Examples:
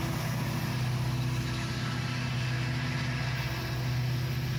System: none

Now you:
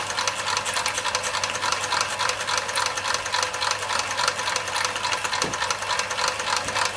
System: none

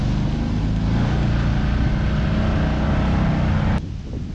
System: none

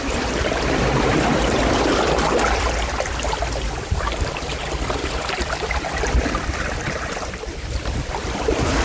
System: vocoder, BigVGAN v2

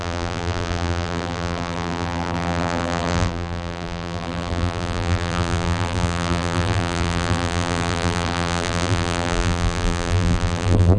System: vocoder, BigVGAN v2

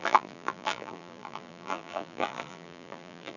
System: vocoder, BigVGAN v2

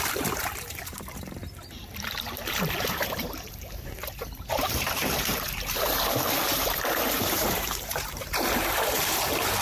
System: vocoder, BigVGAN v2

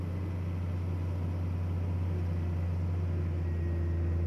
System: none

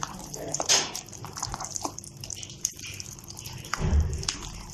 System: vocoder, BigVGAN v2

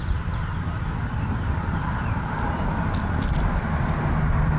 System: vocoder, BigVGAN v2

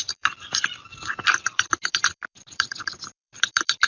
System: vocoder, BigVGAN v2